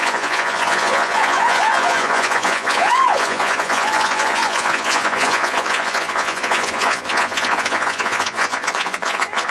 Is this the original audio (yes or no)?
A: no